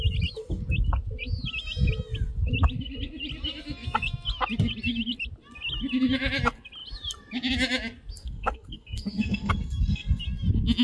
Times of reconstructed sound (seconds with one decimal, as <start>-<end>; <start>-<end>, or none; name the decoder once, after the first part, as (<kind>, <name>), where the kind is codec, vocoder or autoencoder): 8.2-10.2 (codec, SNAC)